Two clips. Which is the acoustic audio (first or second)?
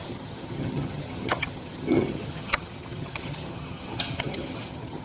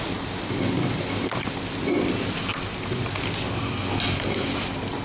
second